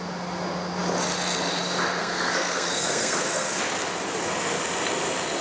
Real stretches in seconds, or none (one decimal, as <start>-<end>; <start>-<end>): 0.0-2.0; 3.6-5.4